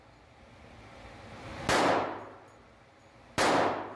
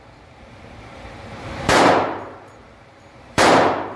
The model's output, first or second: second